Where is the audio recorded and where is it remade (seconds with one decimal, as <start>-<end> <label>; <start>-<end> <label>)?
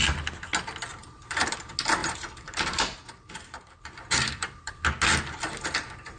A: 0.0-1.0 recorded; 1.0-1.6 remade; 1.6-2.0 recorded; 2.0-4.7 remade; 4.7-6.2 recorded